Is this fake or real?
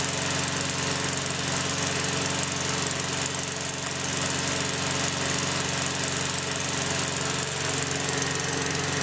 real